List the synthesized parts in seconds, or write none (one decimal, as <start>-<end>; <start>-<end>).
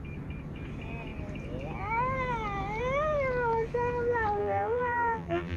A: 4.4-5.6